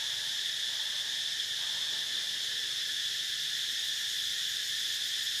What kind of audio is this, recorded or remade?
recorded